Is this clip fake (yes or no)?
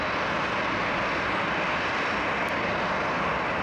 no